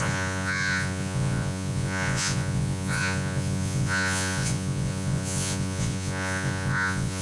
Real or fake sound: fake